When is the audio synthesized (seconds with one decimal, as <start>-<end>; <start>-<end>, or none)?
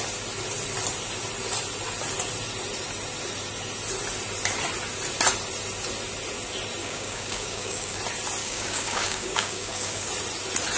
6.8-8.0; 8.4-10.1